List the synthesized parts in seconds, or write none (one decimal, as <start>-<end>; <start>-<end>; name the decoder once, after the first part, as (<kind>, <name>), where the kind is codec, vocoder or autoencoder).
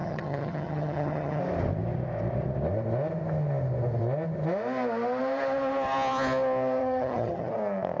0.0-1.4 (vocoder, HiFi-GAN); 6.8-7.5